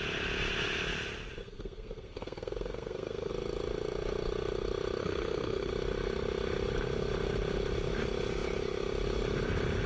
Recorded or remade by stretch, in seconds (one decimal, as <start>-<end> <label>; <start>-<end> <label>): 0.0-1.4 recorded; 1.4-3.3 remade; 3.3-5.0 recorded; 5.0-5.7 remade; 5.7-9.9 recorded